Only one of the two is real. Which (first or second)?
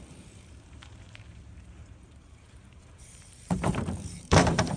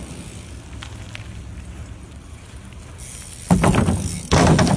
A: second